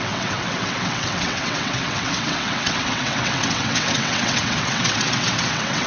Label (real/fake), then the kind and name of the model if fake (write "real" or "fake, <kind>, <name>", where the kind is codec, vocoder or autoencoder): fake, vocoder, WaveNeXt